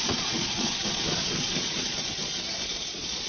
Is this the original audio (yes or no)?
no